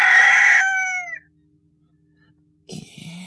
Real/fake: real